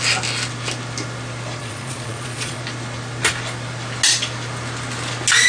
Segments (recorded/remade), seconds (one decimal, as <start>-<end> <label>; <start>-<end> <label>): 0.0-1.6 recorded; 1.6-2.6 remade; 2.6-5.5 recorded